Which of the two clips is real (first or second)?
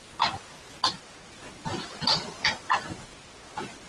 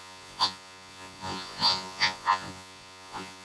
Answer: first